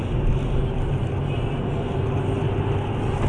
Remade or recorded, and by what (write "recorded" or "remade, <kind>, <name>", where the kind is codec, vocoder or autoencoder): recorded